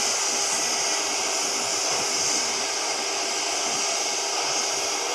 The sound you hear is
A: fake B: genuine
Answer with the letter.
B